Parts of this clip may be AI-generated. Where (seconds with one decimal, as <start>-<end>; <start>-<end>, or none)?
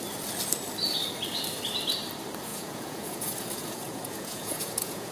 2.5-5.1